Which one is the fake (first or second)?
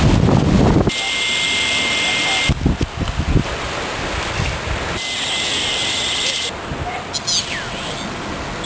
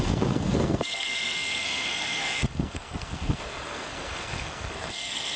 second